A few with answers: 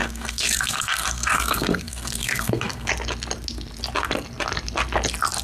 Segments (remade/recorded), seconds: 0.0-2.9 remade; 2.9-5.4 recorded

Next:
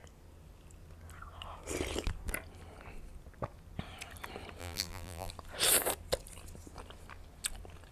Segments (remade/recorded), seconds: 0.0-4.6 recorded; 4.6-5.3 remade; 5.3-7.9 recorded

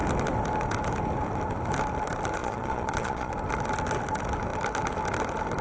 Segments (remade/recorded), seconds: 0.0-2.4 recorded; 2.4-3.3 remade; 3.3-5.6 recorded

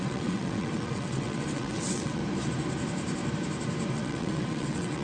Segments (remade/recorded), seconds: 0.0-2.2 remade; 2.2-3.9 recorded; 3.9-5.0 remade

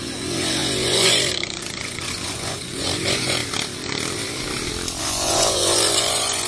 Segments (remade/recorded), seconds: 0.0-3.4 remade; 3.4-5.0 recorded; 5.0-6.5 remade

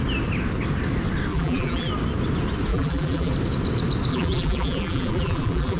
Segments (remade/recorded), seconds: 0.0-1.3 recorded; 1.3-1.9 remade; 1.9-2.7 recorded; 2.7-3.3 remade; 3.3-4.1 recorded; 4.1-5.8 remade